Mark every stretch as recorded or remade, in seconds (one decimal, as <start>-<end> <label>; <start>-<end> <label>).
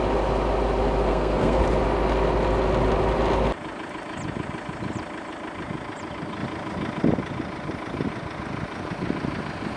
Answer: 0.0-1.1 recorded; 1.1-1.6 remade; 1.6-9.8 recorded